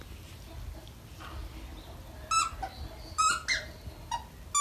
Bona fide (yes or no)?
yes